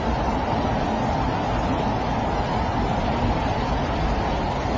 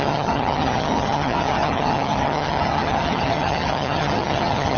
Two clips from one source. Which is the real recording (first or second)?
first